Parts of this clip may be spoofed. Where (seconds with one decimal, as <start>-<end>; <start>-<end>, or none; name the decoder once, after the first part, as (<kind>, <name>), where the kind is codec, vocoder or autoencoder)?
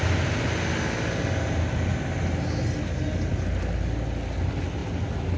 none